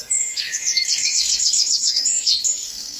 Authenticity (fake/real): fake